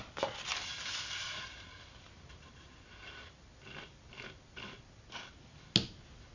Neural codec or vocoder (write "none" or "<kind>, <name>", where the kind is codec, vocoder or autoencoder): none